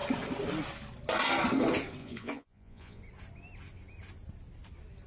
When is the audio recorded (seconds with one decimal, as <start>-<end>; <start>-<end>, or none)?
0.0-2.0; 3.0-5.1